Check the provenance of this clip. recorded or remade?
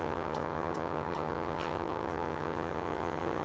remade